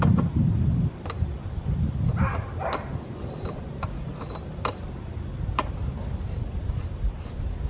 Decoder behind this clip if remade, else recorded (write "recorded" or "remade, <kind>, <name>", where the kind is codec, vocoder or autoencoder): recorded